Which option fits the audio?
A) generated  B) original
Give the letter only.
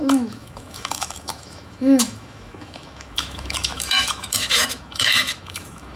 A